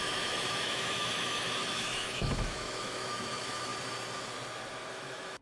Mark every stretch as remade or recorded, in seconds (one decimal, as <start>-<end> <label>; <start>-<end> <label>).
0.0-3.7 remade; 3.7-4.9 recorded; 4.9-5.4 remade